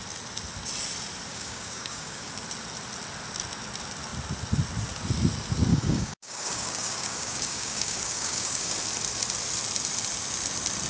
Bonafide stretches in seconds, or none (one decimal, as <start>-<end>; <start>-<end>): 0.0-1.3; 2.3-5.7; 8.7-10.9